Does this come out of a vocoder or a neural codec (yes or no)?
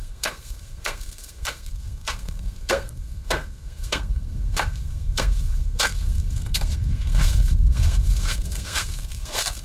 yes